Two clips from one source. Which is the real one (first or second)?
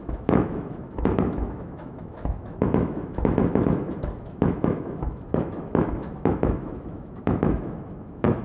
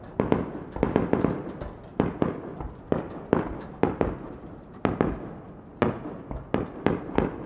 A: second